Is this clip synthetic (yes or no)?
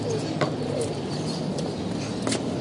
no